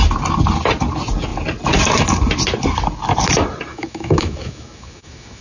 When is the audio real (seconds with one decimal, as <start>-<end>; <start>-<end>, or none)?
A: 0.0-3.7